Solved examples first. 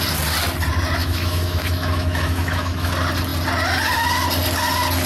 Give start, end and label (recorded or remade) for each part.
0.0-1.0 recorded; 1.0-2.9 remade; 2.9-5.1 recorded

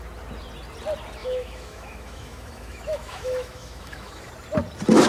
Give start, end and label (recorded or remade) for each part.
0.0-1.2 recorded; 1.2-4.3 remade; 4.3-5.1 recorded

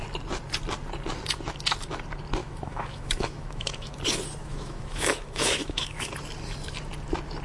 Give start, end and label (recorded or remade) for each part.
0.0-2.4 recorded; 2.4-4.0 remade; 4.0-4.4 recorded; 4.4-6.1 remade; 6.1-7.4 recorded

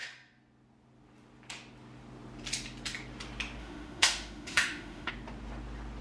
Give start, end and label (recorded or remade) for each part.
0.0-3.6 recorded; 3.6-5.1 remade; 5.1-6.0 recorded

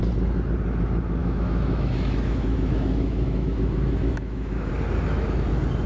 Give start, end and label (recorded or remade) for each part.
0.0-1.2 recorded; 1.2-4.7 remade; 4.7-5.9 recorded